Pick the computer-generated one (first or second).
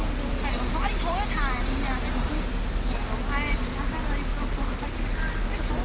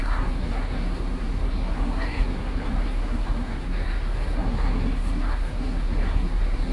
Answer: second